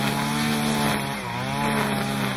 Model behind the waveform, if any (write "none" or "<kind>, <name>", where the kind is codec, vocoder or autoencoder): none